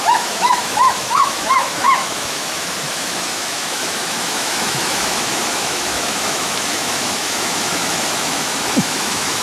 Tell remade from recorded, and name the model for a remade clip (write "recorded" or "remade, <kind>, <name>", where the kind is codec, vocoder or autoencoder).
remade, autoencoder, DAC-VAE